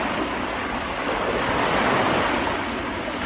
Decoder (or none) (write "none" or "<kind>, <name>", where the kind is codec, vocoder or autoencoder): none